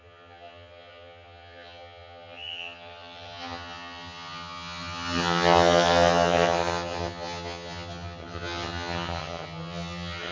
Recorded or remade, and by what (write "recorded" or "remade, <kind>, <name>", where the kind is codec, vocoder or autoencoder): remade, vocoder, HiFi-GAN